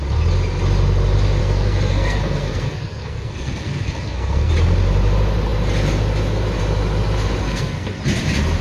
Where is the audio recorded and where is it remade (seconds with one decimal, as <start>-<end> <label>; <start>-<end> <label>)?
0.0-1.4 recorded; 1.4-4.5 remade; 4.5-7.4 recorded; 7.4-8.0 remade; 8.0-8.6 recorded